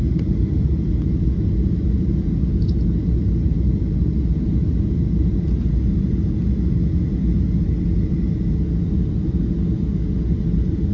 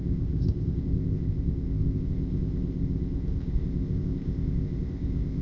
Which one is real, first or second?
first